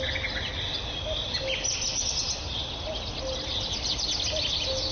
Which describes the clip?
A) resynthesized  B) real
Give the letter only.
B